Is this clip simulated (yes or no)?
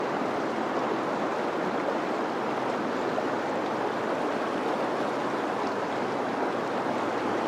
no